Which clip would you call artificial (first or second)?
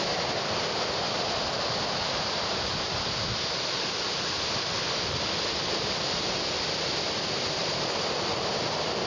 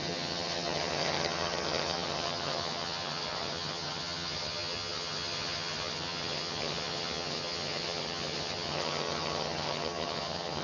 second